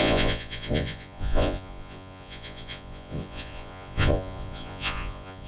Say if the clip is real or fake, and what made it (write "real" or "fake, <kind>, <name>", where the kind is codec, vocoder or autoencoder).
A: fake, vocoder, Vocos